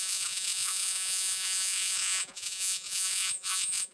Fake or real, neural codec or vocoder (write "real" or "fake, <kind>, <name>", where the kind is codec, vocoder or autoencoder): fake, vocoder, Vocos